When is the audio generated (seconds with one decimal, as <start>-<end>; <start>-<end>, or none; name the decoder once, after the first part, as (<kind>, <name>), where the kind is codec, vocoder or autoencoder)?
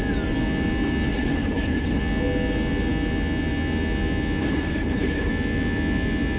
1.1-2.0 (codec, HILCodec); 4.4-5.3